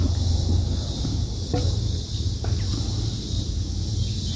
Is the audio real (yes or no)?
yes